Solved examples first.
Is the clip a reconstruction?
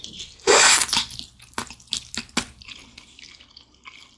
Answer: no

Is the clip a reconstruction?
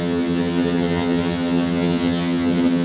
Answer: yes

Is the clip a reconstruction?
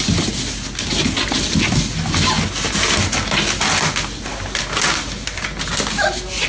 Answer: no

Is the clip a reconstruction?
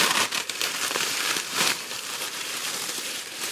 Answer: yes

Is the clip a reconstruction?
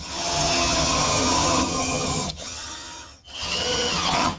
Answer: yes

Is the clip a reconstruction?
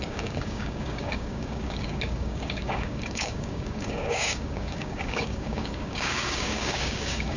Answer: yes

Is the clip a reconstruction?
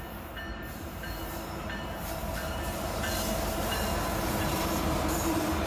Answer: yes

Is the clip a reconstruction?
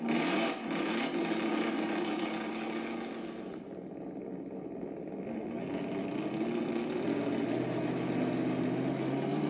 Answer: no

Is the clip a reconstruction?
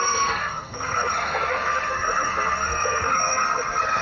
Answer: yes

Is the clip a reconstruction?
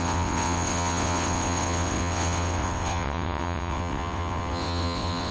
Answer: yes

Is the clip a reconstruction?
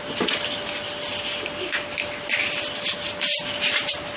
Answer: no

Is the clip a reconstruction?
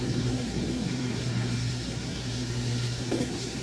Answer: yes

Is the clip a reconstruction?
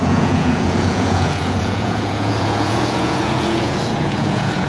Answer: yes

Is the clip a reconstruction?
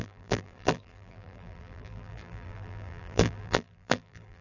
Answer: yes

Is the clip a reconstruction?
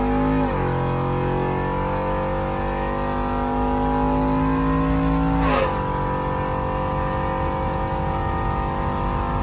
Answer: no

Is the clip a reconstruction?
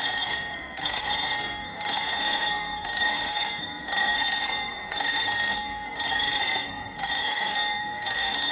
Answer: yes